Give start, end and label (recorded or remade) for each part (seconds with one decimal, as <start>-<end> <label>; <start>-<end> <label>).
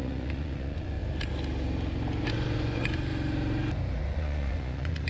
0.0-1.0 remade; 1.0-2.3 recorded; 2.3-3.1 remade; 3.1-4.0 recorded; 4.0-5.1 remade